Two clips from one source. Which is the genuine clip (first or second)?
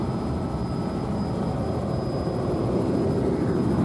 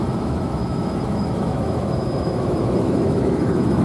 first